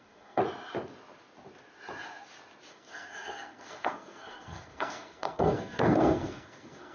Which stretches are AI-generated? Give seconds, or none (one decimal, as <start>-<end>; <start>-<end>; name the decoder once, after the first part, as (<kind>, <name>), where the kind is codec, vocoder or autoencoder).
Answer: 0.0-0.4 (codec, SNAC); 2.7-6.9